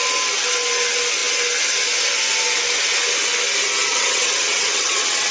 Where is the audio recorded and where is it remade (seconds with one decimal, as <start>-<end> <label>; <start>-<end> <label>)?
0.0-3.9 recorded; 3.9-5.3 remade